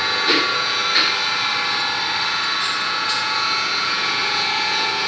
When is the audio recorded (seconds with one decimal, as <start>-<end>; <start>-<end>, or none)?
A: 0.8-2.8